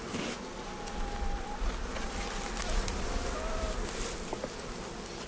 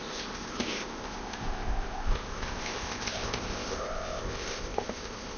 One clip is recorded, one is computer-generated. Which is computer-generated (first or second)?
second